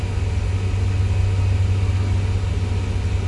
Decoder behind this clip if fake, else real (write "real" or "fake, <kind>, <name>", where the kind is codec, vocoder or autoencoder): real